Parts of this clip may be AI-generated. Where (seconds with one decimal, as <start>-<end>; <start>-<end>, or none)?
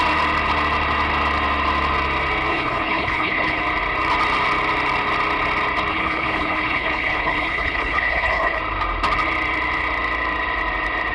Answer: 2.5-3.6; 5.9-8.6